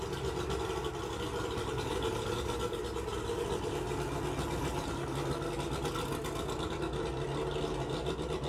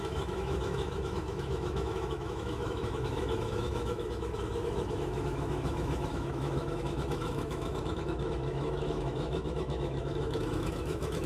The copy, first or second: second